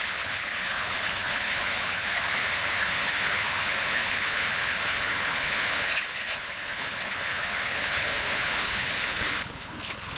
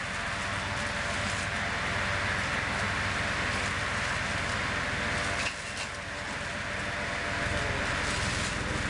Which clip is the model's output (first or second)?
first